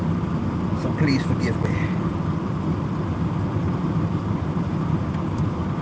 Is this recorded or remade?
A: recorded